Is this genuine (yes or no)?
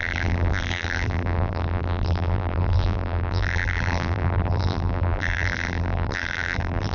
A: no